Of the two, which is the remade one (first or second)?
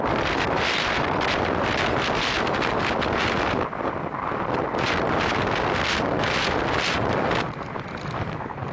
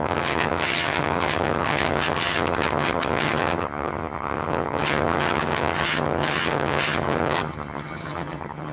second